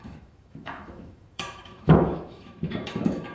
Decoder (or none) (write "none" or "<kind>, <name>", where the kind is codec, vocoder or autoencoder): autoencoder, DAC-VAE